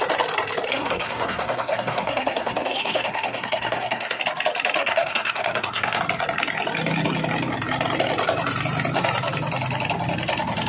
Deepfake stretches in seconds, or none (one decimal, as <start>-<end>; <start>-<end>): 0.7-4.2; 4.8-6.0